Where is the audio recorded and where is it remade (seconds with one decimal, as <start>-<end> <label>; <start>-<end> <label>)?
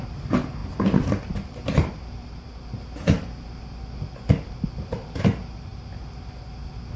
0.0-7.0 recorded